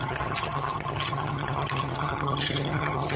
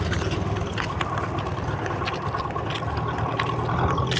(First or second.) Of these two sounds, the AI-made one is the first